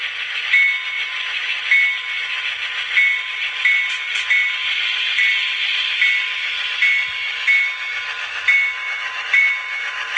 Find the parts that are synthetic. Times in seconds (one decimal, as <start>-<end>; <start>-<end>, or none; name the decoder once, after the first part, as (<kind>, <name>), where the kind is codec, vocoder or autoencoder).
none